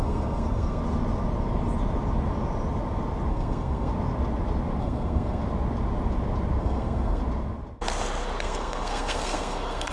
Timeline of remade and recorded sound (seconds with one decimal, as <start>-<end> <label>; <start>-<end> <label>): 0.0-0.8 remade; 0.8-3.3 recorded; 3.3-3.9 remade; 3.9-4.8 recorded; 4.8-5.4 remade; 5.4-6.6 recorded; 6.6-7.2 remade; 7.2-8.4 recorded; 8.4-9.9 remade